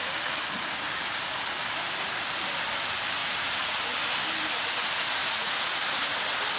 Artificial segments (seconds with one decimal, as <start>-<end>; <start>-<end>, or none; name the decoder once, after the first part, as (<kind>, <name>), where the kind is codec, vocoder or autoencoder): 3.2-3.8 (vocoder, Vocos); 5.2-5.8